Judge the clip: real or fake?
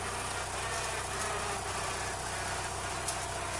real